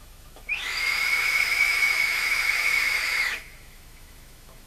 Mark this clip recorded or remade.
remade